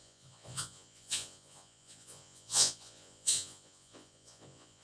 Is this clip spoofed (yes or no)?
yes